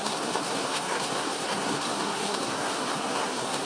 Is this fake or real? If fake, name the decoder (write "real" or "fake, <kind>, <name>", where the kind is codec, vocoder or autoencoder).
fake, codec, SNAC